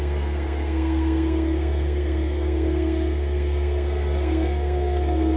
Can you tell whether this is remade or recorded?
remade